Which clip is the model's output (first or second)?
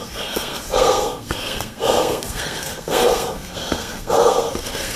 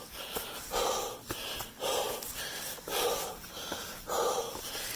first